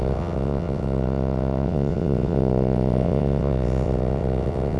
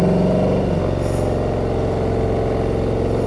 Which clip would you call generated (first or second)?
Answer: first